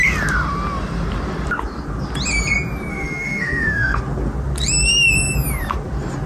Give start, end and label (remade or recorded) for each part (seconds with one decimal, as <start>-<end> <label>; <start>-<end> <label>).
0.0-2.9 recorded; 2.9-4.0 remade; 4.0-6.3 recorded